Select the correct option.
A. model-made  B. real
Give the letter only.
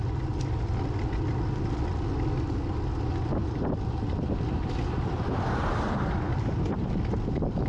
B